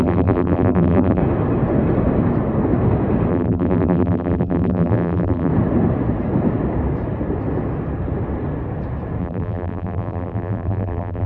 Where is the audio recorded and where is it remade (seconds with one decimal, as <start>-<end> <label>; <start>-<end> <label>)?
0.0-1.2 remade; 1.2-3.3 recorded; 3.3-5.5 remade; 5.5-9.2 recorded; 9.2-11.3 remade

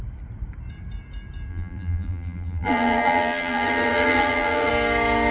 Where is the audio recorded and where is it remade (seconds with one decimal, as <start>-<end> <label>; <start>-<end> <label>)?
0.0-1.5 recorded; 1.5-4.7 remade; 4.7-5.3 recorded

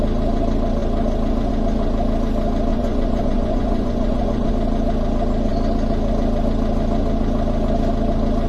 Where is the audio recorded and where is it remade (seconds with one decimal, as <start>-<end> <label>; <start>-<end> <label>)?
0.0-2.7 recorded; 2.7-4.5 remade; 4.5-8.5 recorded

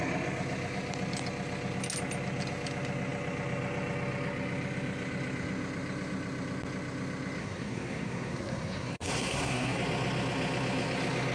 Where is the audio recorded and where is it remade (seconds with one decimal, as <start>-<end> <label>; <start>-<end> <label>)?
0.0-7.4 recorded; 7.4-9.8 remade; 9.8-11.3 recorded

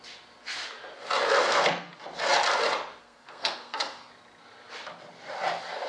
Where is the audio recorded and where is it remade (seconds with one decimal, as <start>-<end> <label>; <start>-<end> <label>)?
0.0-1.4 recorded; 1.4-1.9 remade; 1.9-3.0 recorded; 3.0-4.1 remade; 4.1-5.9 recorded

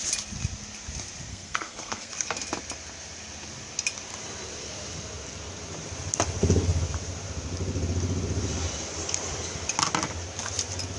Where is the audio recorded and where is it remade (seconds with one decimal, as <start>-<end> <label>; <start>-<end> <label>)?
0.0-1.3 recorded; 1.3-2.1 remade; 2.1-11.0 recorded